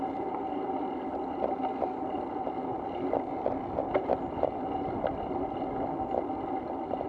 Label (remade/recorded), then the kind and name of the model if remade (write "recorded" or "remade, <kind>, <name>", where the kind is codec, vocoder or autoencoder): recorded